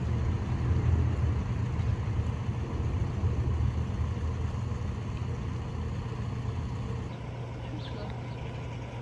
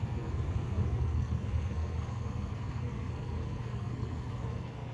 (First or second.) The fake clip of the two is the second